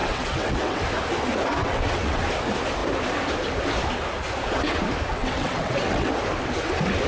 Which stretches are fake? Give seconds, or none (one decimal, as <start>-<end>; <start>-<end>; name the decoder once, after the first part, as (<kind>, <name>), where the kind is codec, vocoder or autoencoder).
0.0-0.8 (vocoder, WaveNeXt); 1.6-2.2; 5.1-6.1